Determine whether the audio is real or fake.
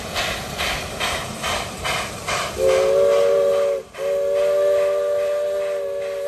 real